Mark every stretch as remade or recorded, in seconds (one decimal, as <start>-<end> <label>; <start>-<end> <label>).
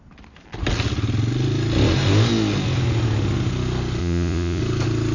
0.0-4.0 recorded; 4.0-4.6 remade; 4.6-5.1 recorded